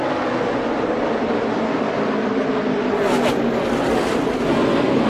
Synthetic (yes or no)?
no